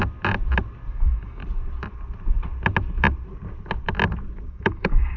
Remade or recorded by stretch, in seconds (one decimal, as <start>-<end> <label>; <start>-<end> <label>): 0.0-0.9 recorded; 0.9-1.4 remade; 1.4-4.5 recorded; 4.5-5.2 remade

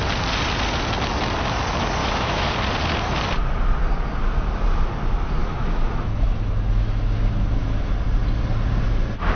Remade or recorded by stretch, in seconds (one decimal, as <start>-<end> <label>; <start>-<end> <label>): 0.0-2.0 recorded; 2.0-2.5 remade; 2.5-5.4 recorded; 5.4-7.9 remade; 7.9-9.3 recorded

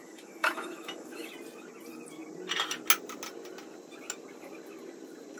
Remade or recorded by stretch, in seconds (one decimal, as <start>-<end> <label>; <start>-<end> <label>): 0.0-1.3 remade; 1.3-5.4 recorded